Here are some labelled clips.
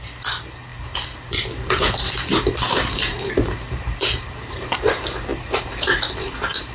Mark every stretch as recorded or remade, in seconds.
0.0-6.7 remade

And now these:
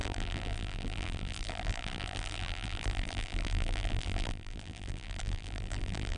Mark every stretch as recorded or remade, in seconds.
0.0-6.2 remade

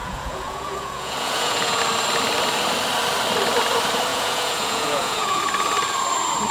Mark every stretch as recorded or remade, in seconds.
0.0-1.8 remade; 1.8-4.1 recorded; 4.1-5.4 remade; 5.4-6.5 recorded

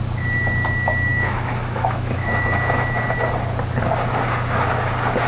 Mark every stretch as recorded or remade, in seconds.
0.0-1.1 recorded; 1.1-3.0 remade; 3.0-5.3 recorded

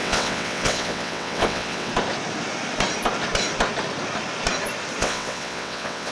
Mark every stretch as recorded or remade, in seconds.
0.0-1.9 remade; 1.9-5.0 recorded; 5.0-6.1 remade

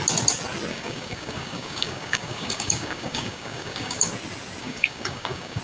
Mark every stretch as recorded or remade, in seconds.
0.0-0.7 recorded; 0.7-4.1 remade; 4.1-4.6 recorded; 4.6-5.6 remade